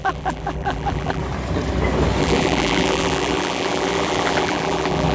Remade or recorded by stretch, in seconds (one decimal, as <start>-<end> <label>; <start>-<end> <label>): 0.0-1.2 remade; 1.2-2.2 recorded; 2.2-5.1 remade